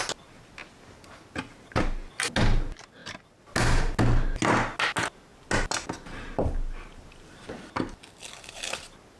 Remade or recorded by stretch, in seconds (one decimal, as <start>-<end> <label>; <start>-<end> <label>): 0.0-9.2 recorded